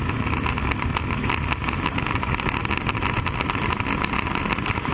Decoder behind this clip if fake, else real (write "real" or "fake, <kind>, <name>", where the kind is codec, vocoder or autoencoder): real